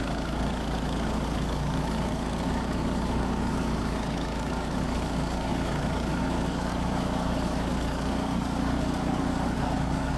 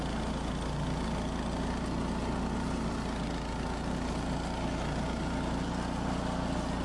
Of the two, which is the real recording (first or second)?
second